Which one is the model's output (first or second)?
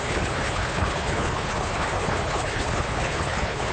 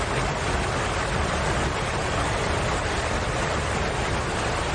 first